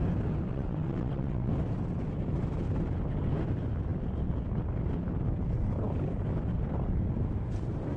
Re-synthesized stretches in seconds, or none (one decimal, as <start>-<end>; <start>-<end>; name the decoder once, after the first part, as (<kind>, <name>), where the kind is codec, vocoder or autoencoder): 0.5-1.5 (vocoder, WaveNeXt)